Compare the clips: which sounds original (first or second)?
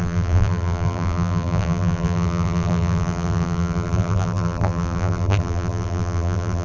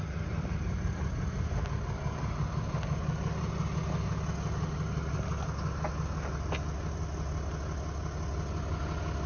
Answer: second